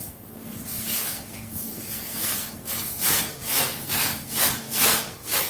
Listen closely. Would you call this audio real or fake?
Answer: fake